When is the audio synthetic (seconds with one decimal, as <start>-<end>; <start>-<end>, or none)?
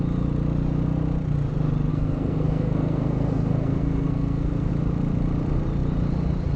1.9-4.7